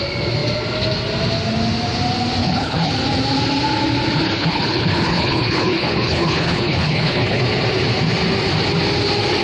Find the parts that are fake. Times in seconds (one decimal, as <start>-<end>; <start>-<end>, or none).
2.4-2.9; 4.2-7.4